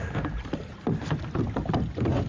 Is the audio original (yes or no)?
yes